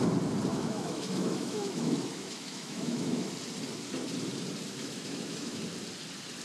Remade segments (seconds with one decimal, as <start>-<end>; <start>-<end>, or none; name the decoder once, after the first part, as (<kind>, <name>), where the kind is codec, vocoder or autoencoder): 0.5-3.3 (autoencoder, DAC-VAE); 4.8-5.6